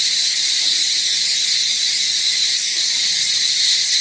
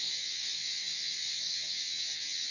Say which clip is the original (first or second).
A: first